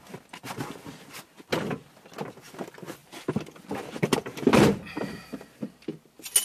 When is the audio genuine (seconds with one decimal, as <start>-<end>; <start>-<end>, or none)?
0.0-3.0; 4.6-6.4